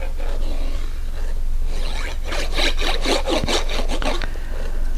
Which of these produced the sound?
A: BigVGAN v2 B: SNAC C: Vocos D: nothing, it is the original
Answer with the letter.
D